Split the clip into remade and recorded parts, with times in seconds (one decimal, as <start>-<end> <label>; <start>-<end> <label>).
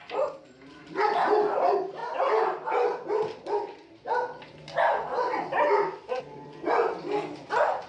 0.0-7.9 recorded